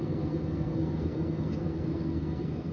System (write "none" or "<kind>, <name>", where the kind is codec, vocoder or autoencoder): codec, SNAC